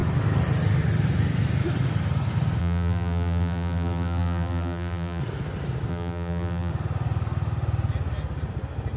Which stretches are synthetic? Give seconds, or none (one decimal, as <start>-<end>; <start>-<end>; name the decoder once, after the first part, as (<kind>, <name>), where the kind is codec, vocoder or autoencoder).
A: 2.6-5.2 (vocoder, BigVGAN v2); 5.9-6.7